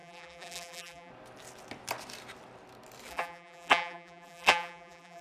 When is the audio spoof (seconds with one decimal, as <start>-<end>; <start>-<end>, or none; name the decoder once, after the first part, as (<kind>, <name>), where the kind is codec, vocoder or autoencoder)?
0.0-1.1 (vocoder, BigVGAN v2); 3.1-5.2